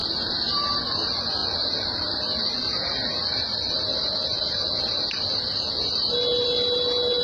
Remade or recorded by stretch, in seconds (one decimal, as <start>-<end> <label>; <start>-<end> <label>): 0.0-7.2 recorded